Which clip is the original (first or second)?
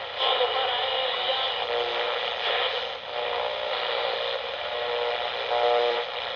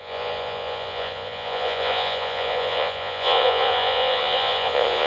first